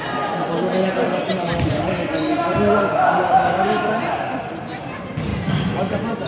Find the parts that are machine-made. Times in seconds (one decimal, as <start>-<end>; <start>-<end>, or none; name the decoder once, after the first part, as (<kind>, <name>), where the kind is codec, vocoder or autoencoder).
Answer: 2.8-4.0 (codec, DAC)